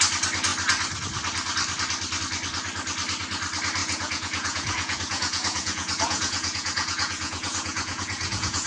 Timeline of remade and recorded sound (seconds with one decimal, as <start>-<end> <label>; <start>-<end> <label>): 0.0-3.8 recorded; 3.8-8.7 remade